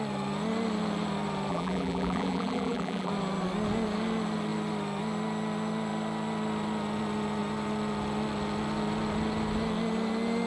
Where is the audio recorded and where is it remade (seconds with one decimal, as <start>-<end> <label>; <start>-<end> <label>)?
0.0-1.5 recorded; 1.5-3.1 remade; 3.1-10.5 recorded